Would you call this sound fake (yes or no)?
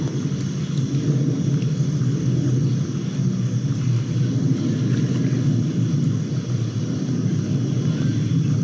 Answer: no